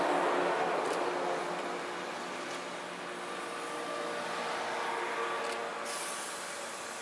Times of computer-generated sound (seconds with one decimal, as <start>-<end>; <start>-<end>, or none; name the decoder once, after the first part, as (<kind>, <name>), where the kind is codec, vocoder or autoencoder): none